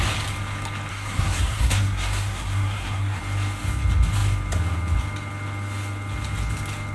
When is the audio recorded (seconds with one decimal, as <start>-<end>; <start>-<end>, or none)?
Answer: 0.0-0.9; 3.2-6.9